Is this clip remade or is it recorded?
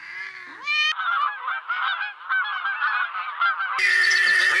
recorded